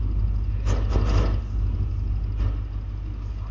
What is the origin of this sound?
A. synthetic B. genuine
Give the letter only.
B